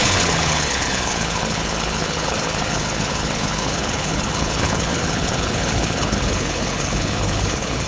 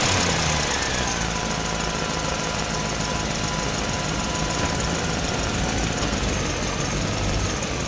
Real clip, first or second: second